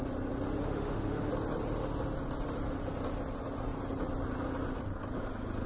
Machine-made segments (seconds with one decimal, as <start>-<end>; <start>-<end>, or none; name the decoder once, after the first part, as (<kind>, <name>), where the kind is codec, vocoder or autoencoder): 0.6-1.3 (autoencoder, DAC-VAE)